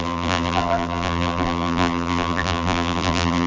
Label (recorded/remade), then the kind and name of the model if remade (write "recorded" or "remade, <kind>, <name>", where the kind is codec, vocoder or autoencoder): remade, vocoder, BigVGAN v2